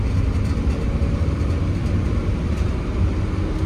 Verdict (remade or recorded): recorded